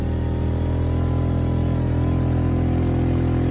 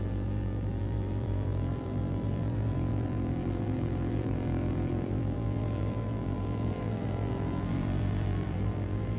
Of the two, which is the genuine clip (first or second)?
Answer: first